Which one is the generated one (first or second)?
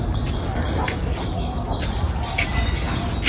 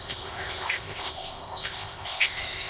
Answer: second